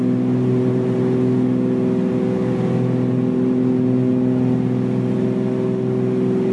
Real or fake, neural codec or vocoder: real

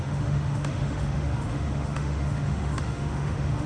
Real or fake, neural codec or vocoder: fake, autoencoder, DAC-VAE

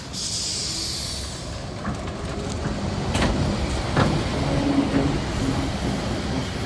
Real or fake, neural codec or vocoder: real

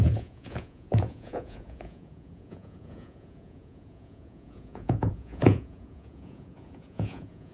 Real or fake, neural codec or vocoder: fake, vocoder, Vocos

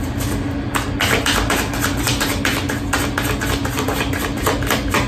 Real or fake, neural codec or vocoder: real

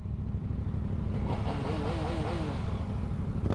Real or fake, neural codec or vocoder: real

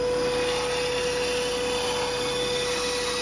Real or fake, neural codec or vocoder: real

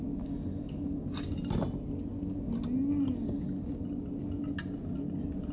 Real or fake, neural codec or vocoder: real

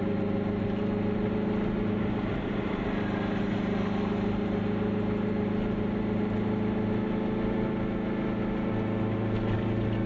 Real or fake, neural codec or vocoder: real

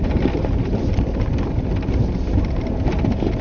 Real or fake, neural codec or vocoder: real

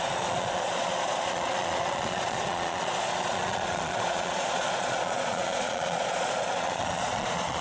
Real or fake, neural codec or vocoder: fake, vocoder, Vocos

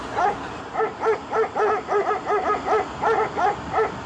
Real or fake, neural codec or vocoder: real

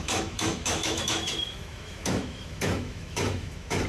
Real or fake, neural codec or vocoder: fake, autoencoder, DAC-VAE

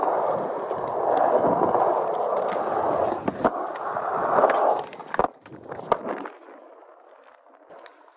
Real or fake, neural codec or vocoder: real